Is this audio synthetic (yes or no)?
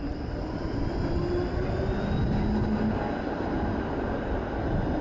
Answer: no